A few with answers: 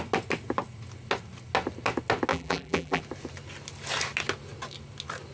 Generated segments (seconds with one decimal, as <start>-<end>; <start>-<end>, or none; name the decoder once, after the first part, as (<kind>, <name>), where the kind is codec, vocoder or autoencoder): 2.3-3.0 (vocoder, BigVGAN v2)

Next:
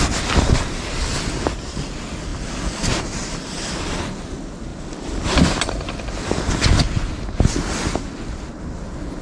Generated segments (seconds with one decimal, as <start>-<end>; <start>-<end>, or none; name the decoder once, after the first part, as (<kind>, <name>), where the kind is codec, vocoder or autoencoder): 4.7-6.4 (vocoder, BigVGAN v2)

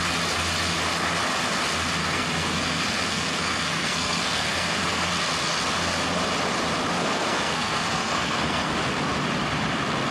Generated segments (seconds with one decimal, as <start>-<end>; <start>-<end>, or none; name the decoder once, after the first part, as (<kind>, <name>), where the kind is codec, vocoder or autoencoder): 2.0-5.1 (codec, SNAC); 7.0-8.7